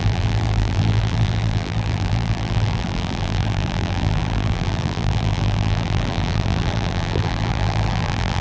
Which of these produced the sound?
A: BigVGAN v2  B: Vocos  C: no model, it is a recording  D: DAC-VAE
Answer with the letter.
A